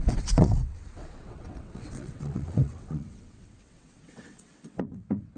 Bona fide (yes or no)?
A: no